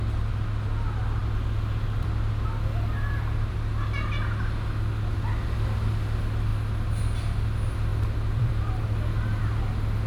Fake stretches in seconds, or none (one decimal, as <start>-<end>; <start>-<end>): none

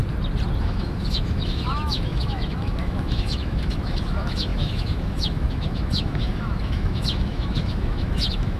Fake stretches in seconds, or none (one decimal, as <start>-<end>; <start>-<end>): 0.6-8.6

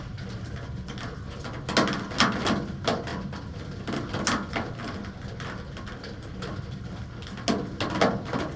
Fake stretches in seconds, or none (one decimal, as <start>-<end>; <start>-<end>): none

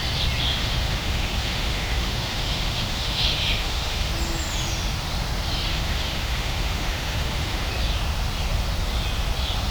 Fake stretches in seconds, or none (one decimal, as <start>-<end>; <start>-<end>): 0.5-4.1; 5.7-7.7